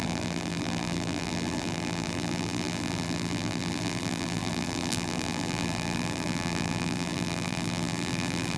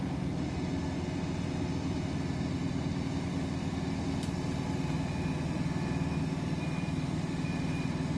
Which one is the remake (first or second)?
first